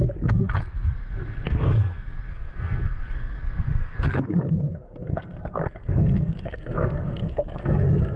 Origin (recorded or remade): remade